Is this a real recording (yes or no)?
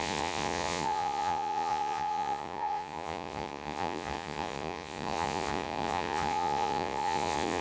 no